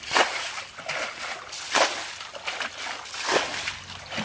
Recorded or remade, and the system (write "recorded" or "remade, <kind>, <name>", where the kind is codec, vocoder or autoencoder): recorded